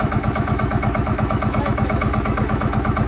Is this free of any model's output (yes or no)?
no